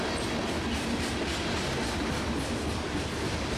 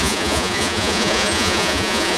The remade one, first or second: second